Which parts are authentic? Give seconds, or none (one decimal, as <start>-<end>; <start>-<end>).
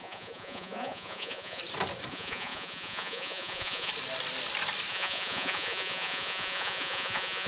1.6-2.1; 3.9-4.9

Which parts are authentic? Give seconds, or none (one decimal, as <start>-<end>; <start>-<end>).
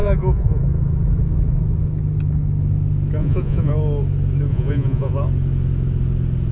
0.6-3.2; 3.7-4.5; 5.1-6.5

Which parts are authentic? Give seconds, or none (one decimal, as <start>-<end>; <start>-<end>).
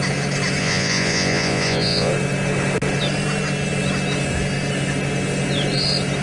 0.0-0.6; 2.1-6.2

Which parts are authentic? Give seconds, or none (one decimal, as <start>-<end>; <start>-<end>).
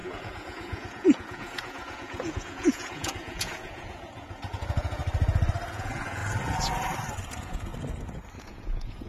5.0-5.7; 6.2-7.3; 7.7-8.4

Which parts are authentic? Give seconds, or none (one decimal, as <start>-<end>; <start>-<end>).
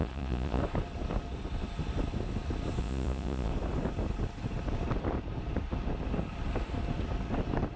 0.6-2.8; 3.5-7.8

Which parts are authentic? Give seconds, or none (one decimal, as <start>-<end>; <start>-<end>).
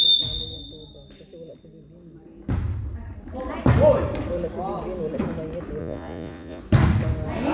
0.0-5.8; 6.6-7.5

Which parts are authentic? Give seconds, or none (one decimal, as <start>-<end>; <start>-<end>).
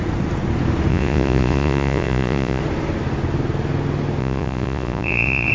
0.0-0.9; 2.6-4.2